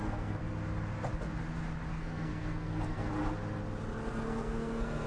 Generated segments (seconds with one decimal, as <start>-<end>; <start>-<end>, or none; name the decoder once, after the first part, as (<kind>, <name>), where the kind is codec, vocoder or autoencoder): 0.0-0.4 (codec, SNAC); 1.9-3.2; 4.1-5.1